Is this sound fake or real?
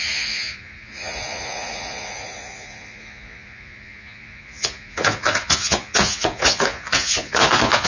fake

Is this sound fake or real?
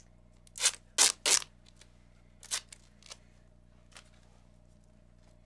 real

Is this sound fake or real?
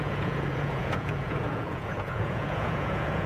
fake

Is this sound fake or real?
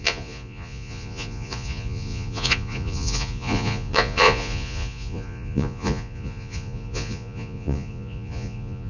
fake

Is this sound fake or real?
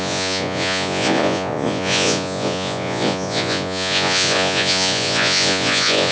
fake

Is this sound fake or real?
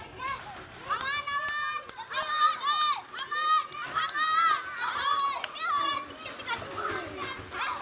real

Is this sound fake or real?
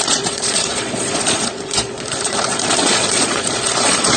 fake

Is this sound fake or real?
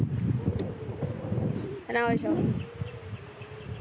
real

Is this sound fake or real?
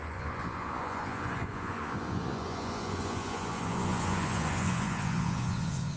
fake